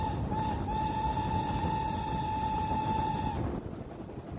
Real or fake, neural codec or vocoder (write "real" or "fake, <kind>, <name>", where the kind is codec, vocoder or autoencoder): real